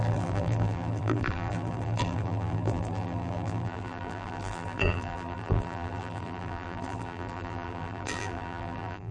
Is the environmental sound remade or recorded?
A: remade